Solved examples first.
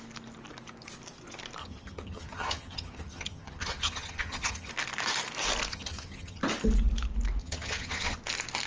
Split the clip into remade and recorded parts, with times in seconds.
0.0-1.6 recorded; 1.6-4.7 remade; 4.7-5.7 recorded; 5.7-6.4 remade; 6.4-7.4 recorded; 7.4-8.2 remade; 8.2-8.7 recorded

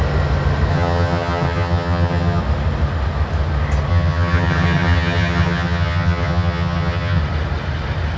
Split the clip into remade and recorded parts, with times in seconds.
0.0-0.7 recorded; 0.7-2.4 remade; 2.4-3.9 recorded; 3.9-7.2 remade; 7.2-8.2 recorded

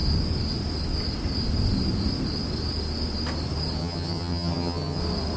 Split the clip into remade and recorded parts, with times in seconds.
0.0-3.8 recorded; 3.8-5.0 remade; 5.0-5.4 recorded

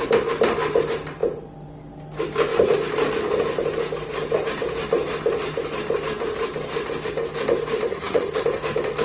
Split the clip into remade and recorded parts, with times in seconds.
0.0-7.9 recorded; 7.9-8.4 remade; 8.4-9.0 recorded

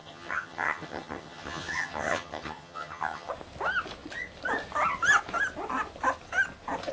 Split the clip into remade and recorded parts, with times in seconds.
0.0-3.3 remade; 3.3-6.9 recorded

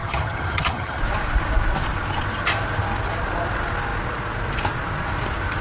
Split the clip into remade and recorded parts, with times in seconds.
0.0-1.0 remade; 1.0-5.6 recorded

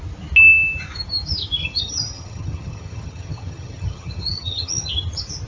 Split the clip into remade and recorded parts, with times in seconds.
0.0-1.6 recorded; 1.6-4.9 remade; 4.9-5.5 recorded

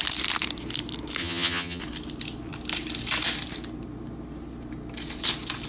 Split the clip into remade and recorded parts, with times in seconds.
0.0-1.2 recorded; 1.2-1.8 remade; 1.8-5.7 recorded